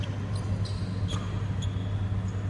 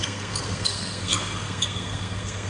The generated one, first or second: second